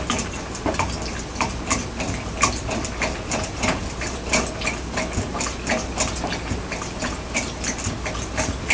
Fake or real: real